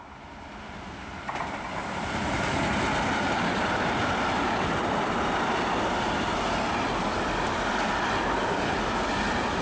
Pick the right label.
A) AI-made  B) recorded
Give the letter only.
B